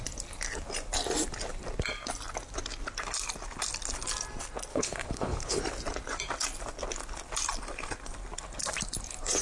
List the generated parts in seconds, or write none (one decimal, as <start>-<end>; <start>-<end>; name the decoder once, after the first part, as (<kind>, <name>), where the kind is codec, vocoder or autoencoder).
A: 4.7-5.6 (codec, HILCodec)